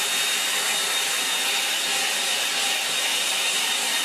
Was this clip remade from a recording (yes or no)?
no